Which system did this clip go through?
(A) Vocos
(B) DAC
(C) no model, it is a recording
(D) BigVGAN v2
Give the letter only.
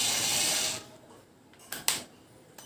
C